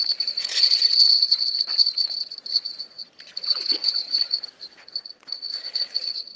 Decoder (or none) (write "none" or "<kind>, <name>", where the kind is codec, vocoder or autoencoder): vocoder, Vocos